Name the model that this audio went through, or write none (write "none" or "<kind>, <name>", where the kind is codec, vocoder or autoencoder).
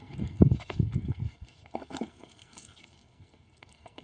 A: codec, SNAC